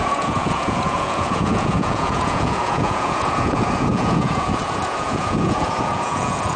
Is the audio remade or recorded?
remade